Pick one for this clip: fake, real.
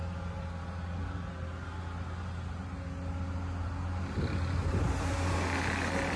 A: real